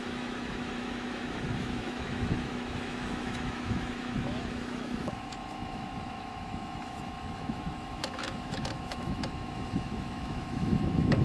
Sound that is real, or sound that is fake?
fake